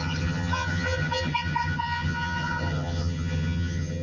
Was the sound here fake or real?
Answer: fake